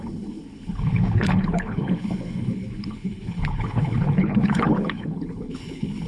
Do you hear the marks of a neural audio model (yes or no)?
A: yes